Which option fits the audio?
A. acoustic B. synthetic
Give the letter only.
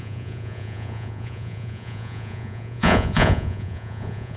B